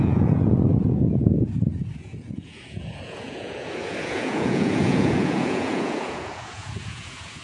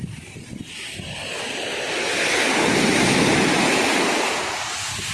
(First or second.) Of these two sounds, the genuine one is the second